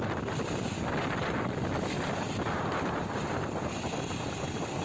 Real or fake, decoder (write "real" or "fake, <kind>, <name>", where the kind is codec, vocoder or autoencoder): real